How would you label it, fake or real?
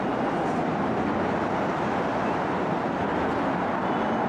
real